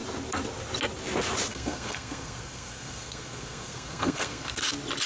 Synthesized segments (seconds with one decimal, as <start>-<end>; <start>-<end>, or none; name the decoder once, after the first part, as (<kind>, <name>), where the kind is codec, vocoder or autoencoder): 1.5-4.6 (codec, SNAC)